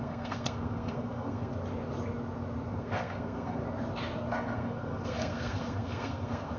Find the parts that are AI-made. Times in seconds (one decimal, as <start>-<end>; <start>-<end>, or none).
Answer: 0.0-1.5; 2.7-3.6; 4.3-6.6